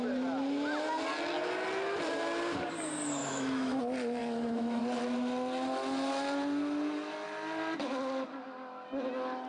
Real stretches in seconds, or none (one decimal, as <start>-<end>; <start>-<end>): 0.0-3.2; 3.8-4.2; 4.8-9.5